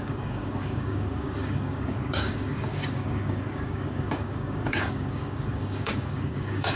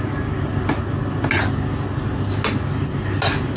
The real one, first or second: second